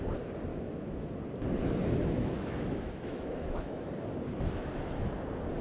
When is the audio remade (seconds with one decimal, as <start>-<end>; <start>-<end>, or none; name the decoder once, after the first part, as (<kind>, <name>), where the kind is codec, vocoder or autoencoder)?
0.5-1.1 (autoencoder, DAC-VAE); 2.0-3.9